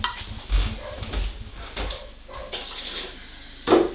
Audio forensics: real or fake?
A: real